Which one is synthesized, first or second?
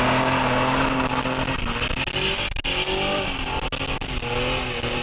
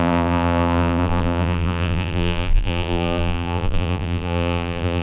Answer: second